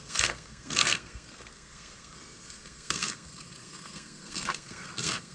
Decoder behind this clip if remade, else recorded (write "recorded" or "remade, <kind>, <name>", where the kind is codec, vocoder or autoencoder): remade, codec, SNAC